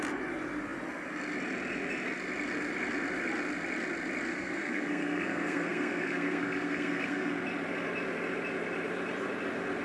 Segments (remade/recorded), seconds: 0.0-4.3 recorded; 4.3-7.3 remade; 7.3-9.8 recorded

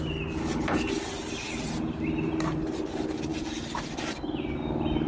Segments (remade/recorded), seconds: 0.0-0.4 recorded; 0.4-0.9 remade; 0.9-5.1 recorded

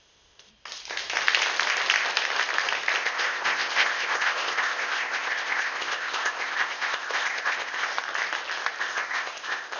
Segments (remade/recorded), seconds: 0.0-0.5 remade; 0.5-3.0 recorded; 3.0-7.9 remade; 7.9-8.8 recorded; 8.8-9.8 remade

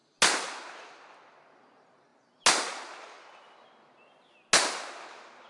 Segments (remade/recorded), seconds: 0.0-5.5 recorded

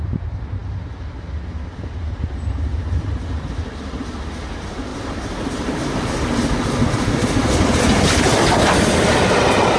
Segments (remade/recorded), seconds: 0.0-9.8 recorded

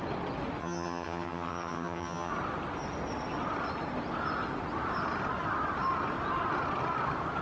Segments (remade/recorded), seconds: 0.0-0.6 recorded; 0.6-2.3 remade; 2.3-7.4 recorded

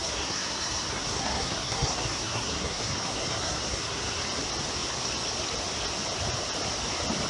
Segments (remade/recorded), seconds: 0.0-4.0 remade; 4.0-7.3 recorded